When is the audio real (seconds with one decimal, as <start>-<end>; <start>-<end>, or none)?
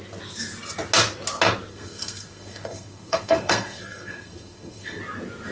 0.0-1.7; 5.0-5.5